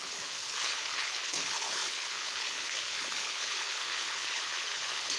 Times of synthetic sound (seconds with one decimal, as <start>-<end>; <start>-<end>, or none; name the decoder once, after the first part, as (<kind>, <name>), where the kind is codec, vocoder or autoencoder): 0.0-5.2 (codec, HILCodec)